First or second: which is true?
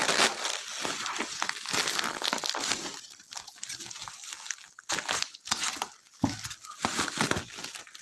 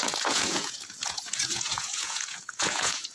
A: first